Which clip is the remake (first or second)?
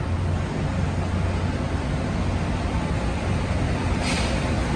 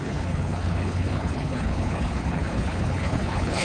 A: second